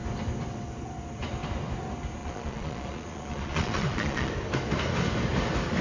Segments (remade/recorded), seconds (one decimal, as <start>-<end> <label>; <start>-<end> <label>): 0.0-2.2 recorded; 2.2-4.3 remade; 4.3-5.8 recorded